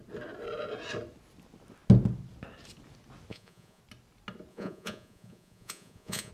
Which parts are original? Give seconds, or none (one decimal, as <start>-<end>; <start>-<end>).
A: 0.0-3.3; 3.8-4.5

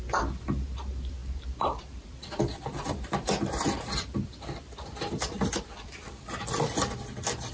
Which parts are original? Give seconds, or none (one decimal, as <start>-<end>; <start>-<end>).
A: none

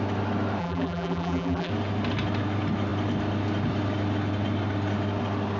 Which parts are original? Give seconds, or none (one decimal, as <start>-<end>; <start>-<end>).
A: 0.0-0.6; 1.7-5.6

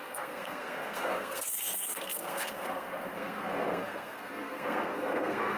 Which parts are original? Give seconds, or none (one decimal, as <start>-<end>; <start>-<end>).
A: none

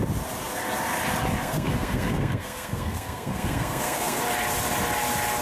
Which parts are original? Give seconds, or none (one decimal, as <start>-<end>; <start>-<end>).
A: 0.0-1.4; 4.2-5.4

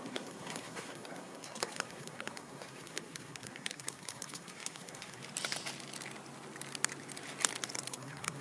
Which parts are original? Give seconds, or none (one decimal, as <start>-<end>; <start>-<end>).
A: 5.2-7.9

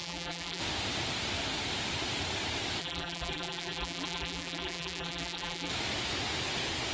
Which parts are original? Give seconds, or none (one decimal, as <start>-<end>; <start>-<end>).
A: 0.6-2.8; 5.7-6.9